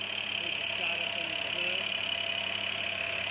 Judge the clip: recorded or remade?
recorded